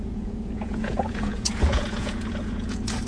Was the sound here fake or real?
fake